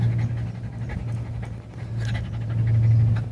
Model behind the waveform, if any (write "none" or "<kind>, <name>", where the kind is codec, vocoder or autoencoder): none